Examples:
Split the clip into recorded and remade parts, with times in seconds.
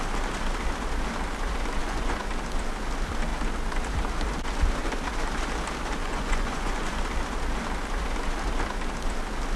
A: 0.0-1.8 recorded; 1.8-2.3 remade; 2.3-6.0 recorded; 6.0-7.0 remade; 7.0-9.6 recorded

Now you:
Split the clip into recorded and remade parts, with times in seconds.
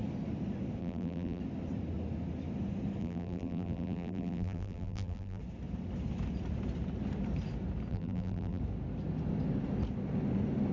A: 0.0-0.8 recorded; 0.8-1.4 remade; 1.4-3.0 recorded; 3.0-5.4 remade; 5.4-7.9 recorded; 7.9-8.6 remade; 8.6-10.7 recorded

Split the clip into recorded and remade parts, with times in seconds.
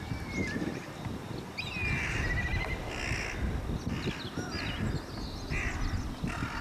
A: 0.0-0.4 recorded; 0.4-1.3 remade; 1.3-6.6 recorded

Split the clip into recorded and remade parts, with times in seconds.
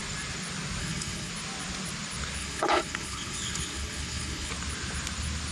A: 0.0-0.8 recorded; 0.8-1.3 remade; 1.3-2.4 recorded; 2.4-4.5 remade; 4.5-5.5 recorded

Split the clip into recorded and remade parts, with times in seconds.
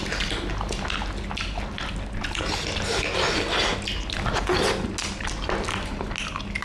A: 0.0-6.6 recorded